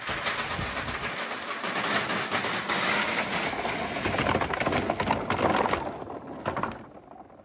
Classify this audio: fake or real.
real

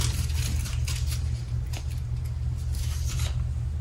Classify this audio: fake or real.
real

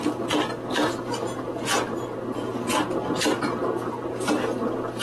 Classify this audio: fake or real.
real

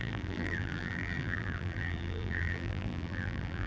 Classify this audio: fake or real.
fake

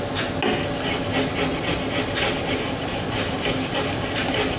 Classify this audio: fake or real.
real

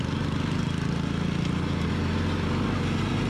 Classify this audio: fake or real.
real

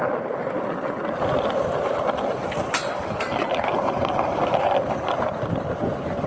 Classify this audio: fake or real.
fake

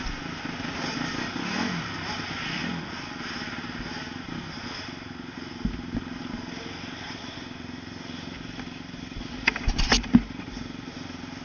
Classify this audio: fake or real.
real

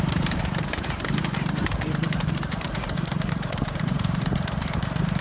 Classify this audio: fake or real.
fake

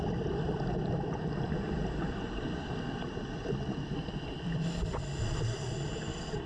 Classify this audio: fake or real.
fake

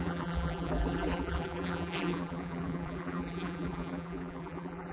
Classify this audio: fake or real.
fake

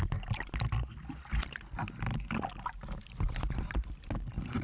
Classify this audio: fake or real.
real